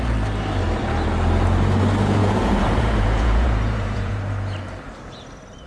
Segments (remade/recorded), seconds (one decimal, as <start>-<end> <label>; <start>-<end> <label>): 0.0-2.2 recorded; 2.2-4.2 remade; 4.2-5.7 recorded